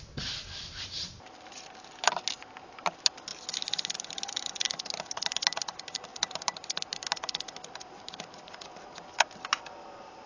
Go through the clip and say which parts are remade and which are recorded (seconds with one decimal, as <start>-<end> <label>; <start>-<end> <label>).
0.0-10.3 recorded